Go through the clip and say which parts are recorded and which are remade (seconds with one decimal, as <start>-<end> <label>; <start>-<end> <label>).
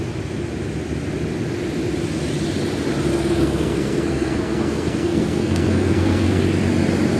0.0-3.1 recorded; 3.1-6.4 remade; 6.4-7.2 recorded